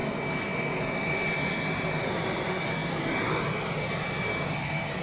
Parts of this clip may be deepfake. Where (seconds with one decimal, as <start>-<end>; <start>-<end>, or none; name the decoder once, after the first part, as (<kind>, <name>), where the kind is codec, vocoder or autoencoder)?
none